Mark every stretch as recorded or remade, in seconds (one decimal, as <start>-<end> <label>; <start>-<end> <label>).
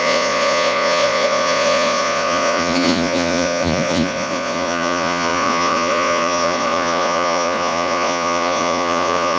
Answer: 0.0-9.4 remade